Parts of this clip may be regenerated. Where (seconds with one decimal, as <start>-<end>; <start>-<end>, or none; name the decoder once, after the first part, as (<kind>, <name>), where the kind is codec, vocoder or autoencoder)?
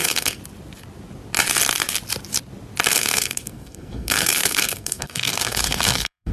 0.0-0.4 (codec, SNAC); 2.9-6.3